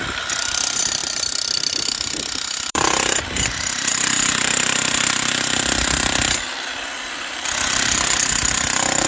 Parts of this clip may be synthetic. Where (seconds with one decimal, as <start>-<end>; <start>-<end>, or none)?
0.0-9.1